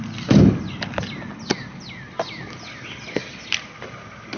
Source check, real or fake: real